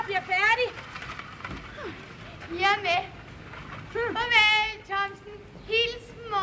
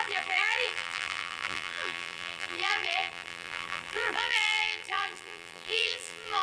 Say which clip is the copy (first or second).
second